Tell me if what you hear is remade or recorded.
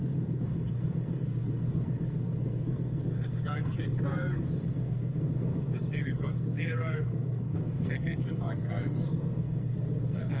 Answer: remade